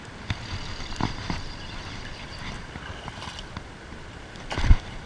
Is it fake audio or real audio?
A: real